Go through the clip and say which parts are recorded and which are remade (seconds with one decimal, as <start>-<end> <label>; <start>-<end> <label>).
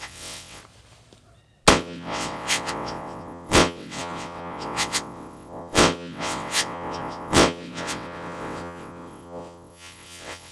0.0-0.6 remade; 0.6-1.7 recorded; 1.7-10.5 remade